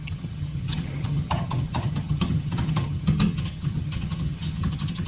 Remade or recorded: remade